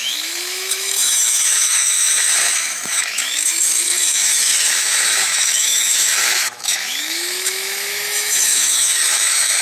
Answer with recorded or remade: remade